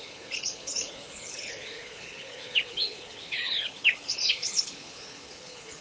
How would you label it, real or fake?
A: fake